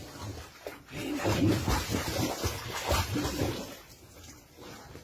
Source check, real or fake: real